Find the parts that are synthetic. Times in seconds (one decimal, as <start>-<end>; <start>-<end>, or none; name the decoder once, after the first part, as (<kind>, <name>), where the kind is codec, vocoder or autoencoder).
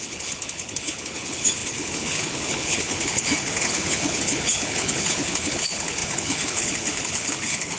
0.0-7.8 (codec, HILCodec)